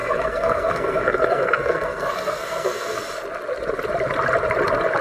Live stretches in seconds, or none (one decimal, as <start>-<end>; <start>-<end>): 3.0-5.0